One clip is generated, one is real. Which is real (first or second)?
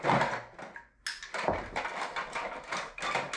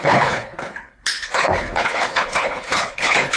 first